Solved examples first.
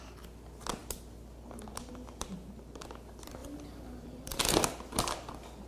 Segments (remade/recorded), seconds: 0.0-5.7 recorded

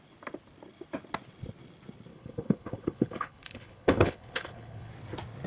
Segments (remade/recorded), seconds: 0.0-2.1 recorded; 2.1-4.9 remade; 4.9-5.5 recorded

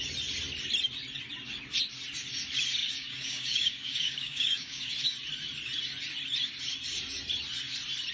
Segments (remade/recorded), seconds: 0.0-2.8 recorded; 2.8-4.9 remade; 4.9-8.1 recorded

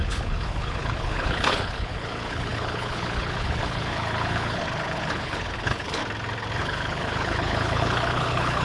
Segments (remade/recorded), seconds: 0.0-6.0 remade; 6.0-6.6 recorded; 6.6-8.6 remade